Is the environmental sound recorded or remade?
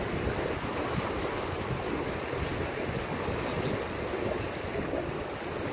recorded